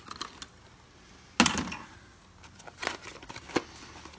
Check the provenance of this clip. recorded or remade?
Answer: recorded